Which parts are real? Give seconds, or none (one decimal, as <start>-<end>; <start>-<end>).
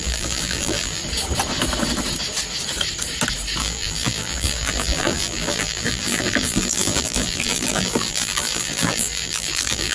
1.0-3.6